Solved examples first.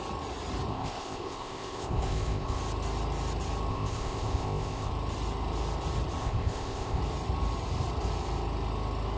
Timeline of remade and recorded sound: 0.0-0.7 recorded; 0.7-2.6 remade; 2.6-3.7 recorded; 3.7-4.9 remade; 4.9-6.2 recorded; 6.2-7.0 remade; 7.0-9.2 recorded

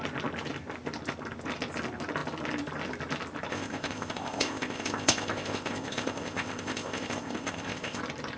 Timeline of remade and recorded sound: 0.0-3.5 recorded; 3.5-8.0 remade; 8.0-8.4 recorded

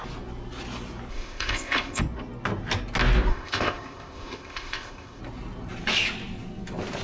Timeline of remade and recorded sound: 0.0-1.1 recorded; 1.1-2.0 remade; 2.0-3.3 recorded; 3.3-5.2 remade; 5.2-7.0 recorded

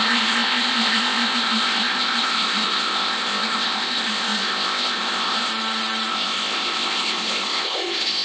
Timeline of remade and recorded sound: 0.0-5.5 remade; 5.5-6.1 recorded; 6.1-8.2 remade